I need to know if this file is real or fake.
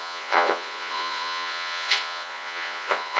fake